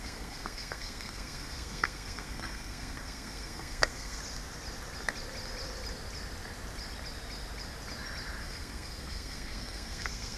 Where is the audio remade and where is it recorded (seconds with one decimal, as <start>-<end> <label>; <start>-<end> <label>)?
0.0-4.2 remade; 4.2-8.4 recorded; 8.4-10.4 remade